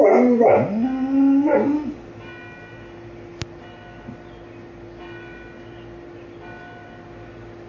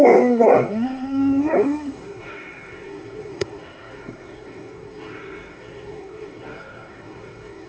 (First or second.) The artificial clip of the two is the second